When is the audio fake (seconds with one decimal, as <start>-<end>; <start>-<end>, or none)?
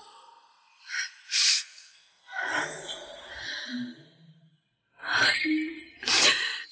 1.5-2.5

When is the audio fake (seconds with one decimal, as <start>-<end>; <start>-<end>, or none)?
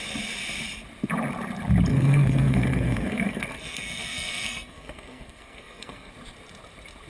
1.9-6.1